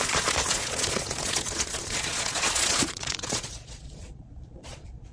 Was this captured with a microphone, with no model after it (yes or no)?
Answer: no